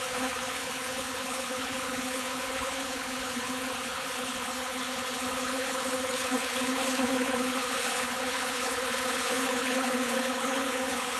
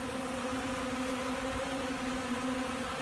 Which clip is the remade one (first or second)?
first